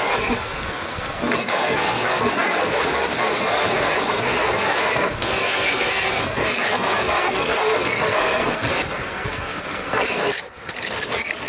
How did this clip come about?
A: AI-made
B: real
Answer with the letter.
A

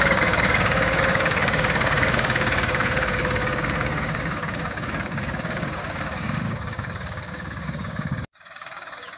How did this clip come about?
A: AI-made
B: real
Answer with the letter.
A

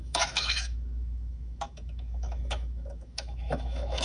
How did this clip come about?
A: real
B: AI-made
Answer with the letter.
B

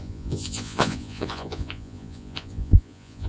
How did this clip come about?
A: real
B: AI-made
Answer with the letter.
B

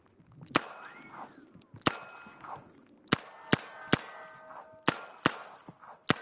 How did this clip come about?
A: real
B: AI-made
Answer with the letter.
A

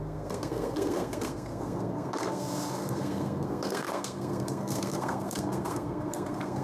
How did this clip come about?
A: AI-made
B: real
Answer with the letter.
A